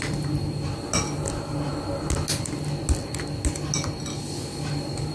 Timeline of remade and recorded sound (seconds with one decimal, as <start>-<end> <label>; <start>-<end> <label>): 0.0-5.1 recorded